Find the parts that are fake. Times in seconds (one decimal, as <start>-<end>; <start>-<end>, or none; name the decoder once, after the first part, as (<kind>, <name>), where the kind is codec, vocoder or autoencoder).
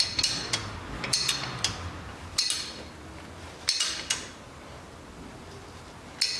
none